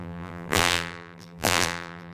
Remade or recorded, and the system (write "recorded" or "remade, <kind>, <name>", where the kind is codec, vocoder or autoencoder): remade, vocoder, BigVGAN v2